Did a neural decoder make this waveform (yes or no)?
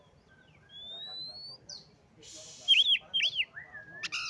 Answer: no